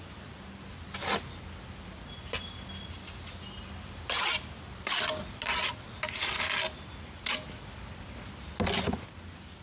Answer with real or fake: real